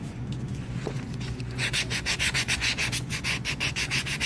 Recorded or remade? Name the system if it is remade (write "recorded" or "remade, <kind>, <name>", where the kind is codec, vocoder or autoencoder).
remade, vocoder, Vocos